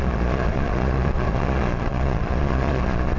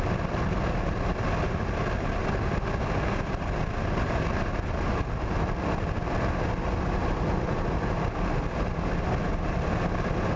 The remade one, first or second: first